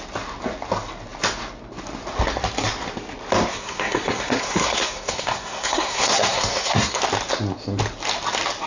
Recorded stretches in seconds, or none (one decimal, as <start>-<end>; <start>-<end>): 0.0-3.5; 7.0-8.7